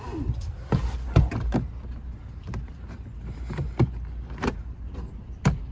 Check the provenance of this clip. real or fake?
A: real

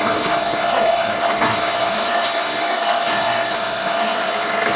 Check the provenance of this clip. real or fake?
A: fake